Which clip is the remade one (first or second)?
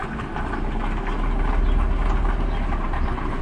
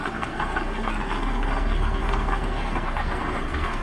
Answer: second